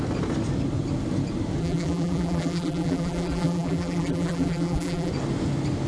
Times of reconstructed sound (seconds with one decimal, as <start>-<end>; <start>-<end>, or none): 1.6-5.1